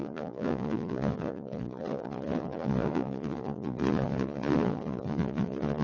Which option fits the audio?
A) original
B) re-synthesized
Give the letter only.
B